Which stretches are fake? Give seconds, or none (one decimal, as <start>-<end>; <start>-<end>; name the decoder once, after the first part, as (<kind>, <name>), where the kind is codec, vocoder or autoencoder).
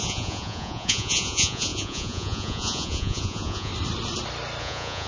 0.0-3.7 (vocoder, Vocos); 4.6-5.1